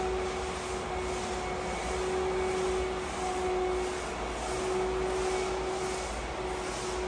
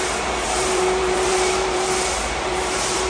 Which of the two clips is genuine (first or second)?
first